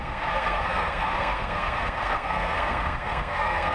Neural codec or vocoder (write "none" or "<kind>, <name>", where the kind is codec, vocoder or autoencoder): codec, SNAC